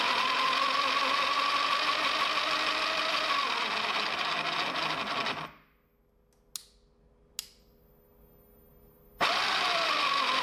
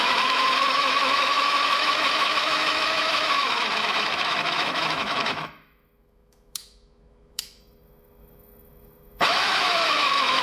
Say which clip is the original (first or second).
first